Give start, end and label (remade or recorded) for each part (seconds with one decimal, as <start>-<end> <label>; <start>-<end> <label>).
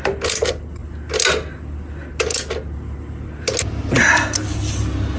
0.0-5.2 recorded